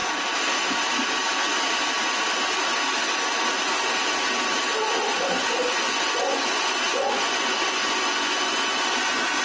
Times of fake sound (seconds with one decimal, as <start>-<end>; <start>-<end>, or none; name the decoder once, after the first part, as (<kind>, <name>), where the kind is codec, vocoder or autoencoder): 5.0-9.4 (vocoder, Vocos)